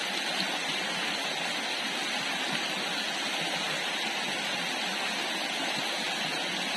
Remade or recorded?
recorded